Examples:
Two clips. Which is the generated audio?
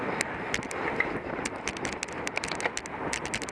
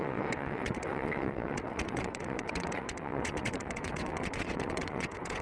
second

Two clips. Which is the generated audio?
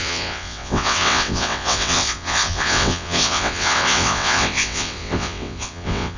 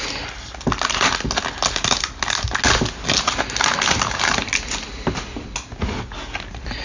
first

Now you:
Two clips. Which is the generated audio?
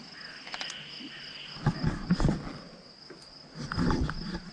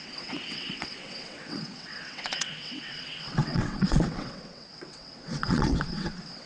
second